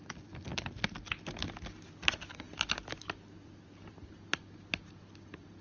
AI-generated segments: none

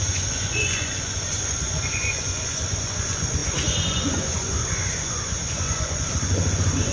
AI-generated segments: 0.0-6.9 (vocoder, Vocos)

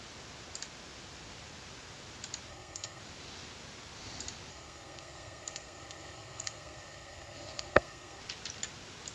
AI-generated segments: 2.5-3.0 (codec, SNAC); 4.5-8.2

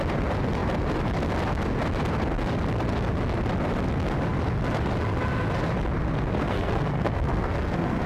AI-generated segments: 6.3-8.1 (codec, SNAC)

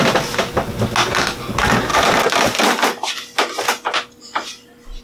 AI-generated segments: none